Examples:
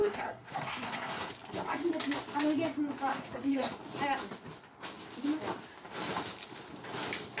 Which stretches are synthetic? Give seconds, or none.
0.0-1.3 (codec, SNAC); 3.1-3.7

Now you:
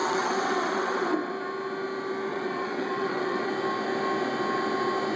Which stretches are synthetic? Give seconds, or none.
0.0-1.3 (vocoder, WaveNeXt); 2.3-3.5

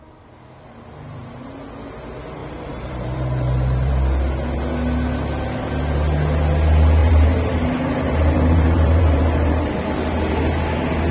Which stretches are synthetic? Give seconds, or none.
2.4-3.9 (vocoder, BigVGAN v2); 7.0-9.7

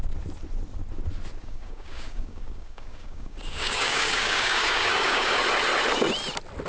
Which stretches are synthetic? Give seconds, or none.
1.4-5.4 (codec, DAC)

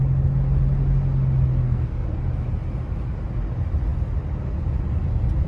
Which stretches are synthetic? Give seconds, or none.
1.6-2.2 (codec, SNAC)

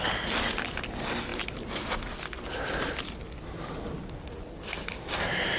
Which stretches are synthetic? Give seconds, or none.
none

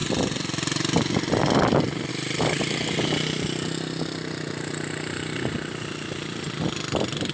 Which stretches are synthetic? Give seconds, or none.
none

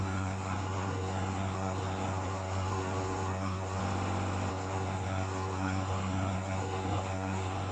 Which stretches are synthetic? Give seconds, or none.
0.0-3.8 (codec, SNAC); 4.5-7.7